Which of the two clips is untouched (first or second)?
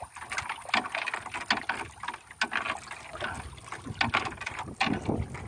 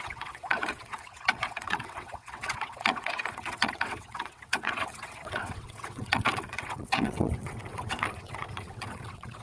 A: first